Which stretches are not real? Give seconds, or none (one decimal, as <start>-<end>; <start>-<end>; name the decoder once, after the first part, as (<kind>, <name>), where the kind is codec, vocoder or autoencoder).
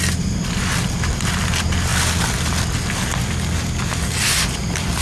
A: none